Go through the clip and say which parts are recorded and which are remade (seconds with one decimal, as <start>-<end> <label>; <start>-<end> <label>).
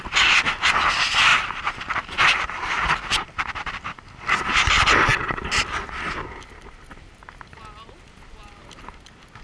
0.0-1.3 recorded; 1.3-4.0 remade; 4.0-9.4 recorded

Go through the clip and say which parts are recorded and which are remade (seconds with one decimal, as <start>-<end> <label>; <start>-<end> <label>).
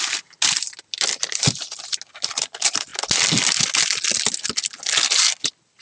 0.0-5.8 recorded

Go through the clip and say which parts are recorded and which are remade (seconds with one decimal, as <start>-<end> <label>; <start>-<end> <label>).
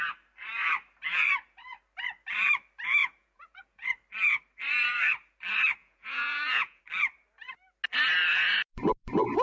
0.0-3.0 recorded; 3.0-3.9 remade; 3.9-5.8 recorded; 5.8-6.8 remade; 6.8-9.4 recorded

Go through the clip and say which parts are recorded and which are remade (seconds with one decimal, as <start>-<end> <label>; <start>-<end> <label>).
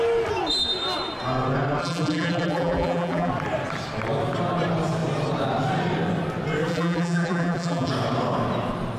0.0-1.8 recorded; 1.8-3.3 remade; 3.3-6.7 recorded; 6.7-7.9 remade; 7.9-9.0 recorded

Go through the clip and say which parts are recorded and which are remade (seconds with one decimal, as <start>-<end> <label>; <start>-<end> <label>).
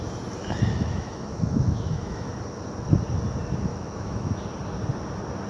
0.0-0.7 recorded; 0.7-2.3 remade; 2.3-3.7 recorded; 3.7-4.4 remade; 4.4-5.5 recorded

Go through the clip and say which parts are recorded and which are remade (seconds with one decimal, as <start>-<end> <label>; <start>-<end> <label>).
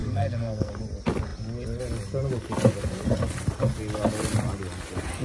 0.0-0.7 remade; 0.7-5.2 recorded